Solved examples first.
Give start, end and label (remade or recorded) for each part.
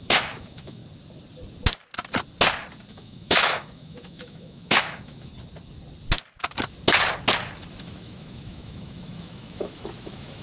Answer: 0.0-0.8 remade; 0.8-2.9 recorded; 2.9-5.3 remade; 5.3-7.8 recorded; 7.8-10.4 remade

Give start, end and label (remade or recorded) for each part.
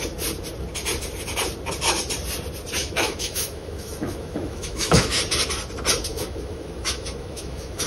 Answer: 0.0-2.8 recorded; 2.8-5.2 remade; 5.2-6.1 recorded; 6.1-7.9 remade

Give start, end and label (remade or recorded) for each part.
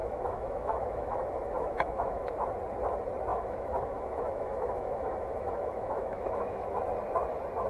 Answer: 0.0-2.3 remade; 2.3-3.3 recorded; 3.3-6.8 remade; 6.8-7.7 recorded